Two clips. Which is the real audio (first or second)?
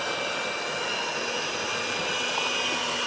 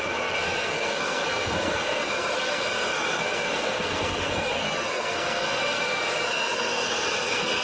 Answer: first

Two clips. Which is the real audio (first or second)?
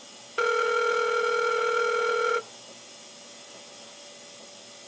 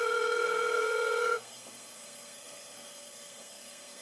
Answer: first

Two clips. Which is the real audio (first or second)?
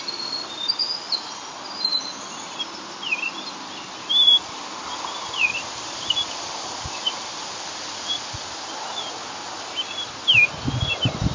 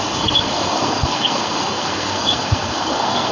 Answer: first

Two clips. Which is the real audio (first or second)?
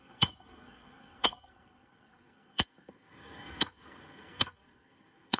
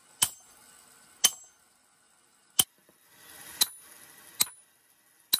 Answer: second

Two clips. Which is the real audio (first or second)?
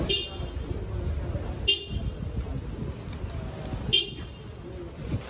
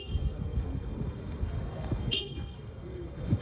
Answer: first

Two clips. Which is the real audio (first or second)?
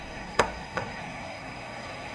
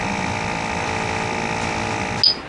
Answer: second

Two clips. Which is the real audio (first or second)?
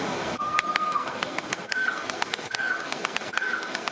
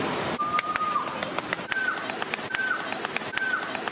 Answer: second